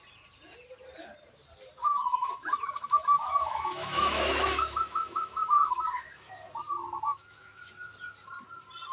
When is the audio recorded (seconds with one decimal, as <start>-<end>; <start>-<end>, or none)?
0.0-1.8; 6.3-7.1; 7.7-8.9